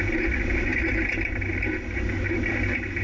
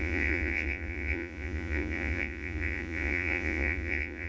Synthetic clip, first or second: second